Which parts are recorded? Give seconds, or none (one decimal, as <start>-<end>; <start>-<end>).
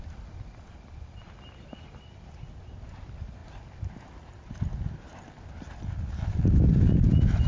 0.0-7.5